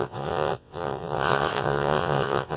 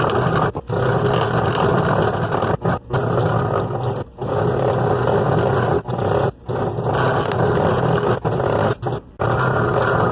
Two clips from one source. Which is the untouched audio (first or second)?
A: second